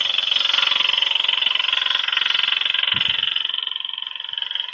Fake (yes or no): no